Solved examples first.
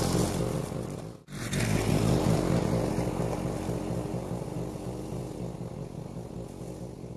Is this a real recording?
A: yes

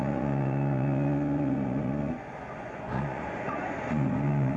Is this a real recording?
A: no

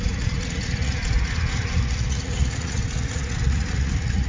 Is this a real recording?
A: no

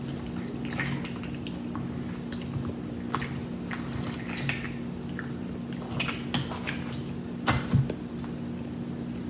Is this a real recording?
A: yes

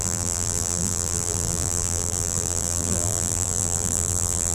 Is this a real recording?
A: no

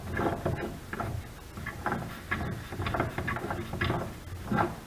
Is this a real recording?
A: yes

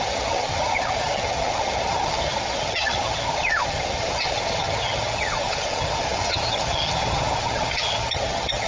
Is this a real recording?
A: no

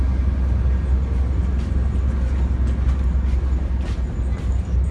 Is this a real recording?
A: yes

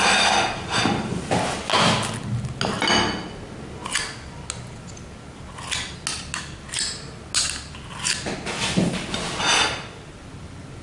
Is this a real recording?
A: yes